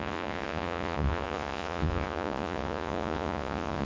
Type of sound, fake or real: fake